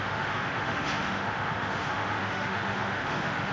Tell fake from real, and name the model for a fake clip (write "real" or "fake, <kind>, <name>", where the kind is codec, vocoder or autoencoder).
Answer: fake, autoencoder, DAC-VAE